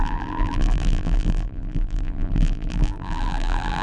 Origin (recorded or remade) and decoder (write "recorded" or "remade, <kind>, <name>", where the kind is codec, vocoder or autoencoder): remade, vocoder, BigVGAN v2